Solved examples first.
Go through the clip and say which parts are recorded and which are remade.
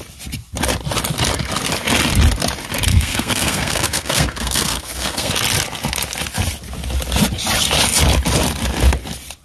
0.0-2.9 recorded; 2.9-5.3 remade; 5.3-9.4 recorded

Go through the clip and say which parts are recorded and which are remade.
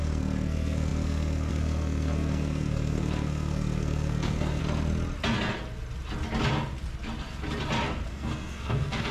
0.0-4.6 remade; 4.6-8.1 recorded; 8.1-9.1 remade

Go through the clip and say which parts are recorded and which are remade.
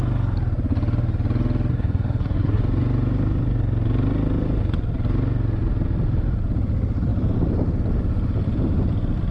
0.0-1.7 recorded; 1.7-2.6 remade; 2.6-9.3 recorded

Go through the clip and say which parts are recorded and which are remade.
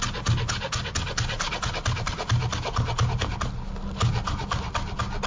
0.0-5.3 recorded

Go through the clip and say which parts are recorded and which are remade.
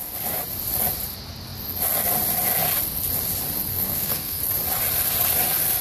0.0-3.7 recorded; 3.7-4.4 remade; 4.4-5.8 recorded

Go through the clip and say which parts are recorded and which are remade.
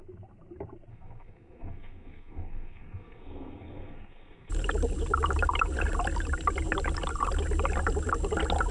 0.0-0.9 recorded; 0.9-4.5 remade; 4.5-8.7 recorded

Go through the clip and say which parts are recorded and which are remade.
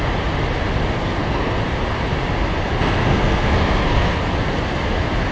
0.0-1.0 recorded; 1.0-1.6 remade; 1.6-2.8 recorded; 2.8-4.2 remade; 4.2-5.3 recorded